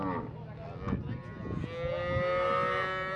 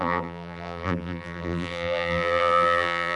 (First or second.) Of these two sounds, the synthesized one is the second